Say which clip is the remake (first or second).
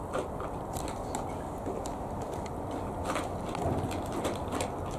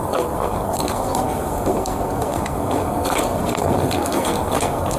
second